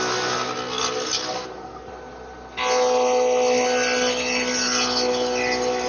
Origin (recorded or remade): recorded